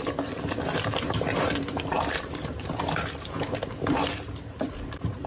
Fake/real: fake